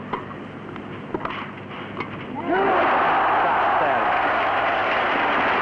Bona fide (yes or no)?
yes